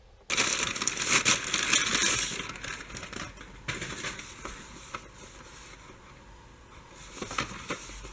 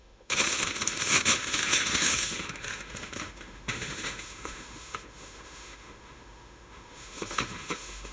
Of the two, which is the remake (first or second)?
second